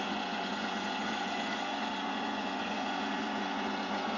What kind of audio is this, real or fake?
fake